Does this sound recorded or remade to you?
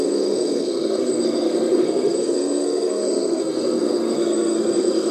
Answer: remade